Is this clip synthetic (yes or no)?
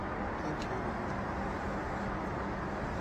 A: no